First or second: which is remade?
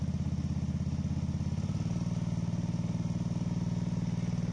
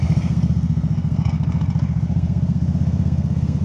second